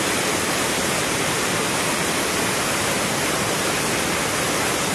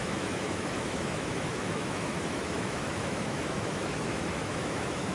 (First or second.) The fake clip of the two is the second